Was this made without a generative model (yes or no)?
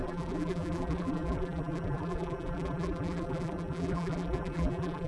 no